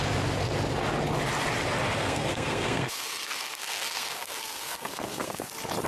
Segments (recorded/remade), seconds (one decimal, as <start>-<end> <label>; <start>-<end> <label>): 0.0-2.0 recorded; 2.0-5.5 remade; 5.5-5.9 recorded

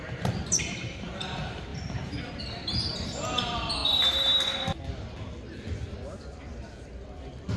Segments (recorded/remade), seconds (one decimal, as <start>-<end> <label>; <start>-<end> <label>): 0.0-3.8 remade; 3.8-7.6 recorded

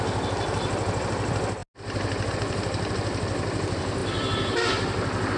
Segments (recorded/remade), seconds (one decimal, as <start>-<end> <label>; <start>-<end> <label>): 0.0-5.4 recorded

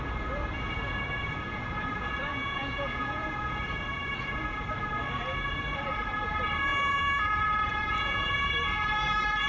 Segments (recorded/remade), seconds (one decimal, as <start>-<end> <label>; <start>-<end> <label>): 0.0-2.3 recorded; 2.3-3.3 remade; 3.3-6.7 recorded; 6.7-7.3 remade; 7.3-7.7 recorded; 7.7-8.5 remade; 8.5-9.5 recorded